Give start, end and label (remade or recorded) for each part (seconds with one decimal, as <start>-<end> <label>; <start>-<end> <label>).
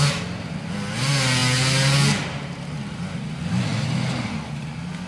0.0-5.1 recorded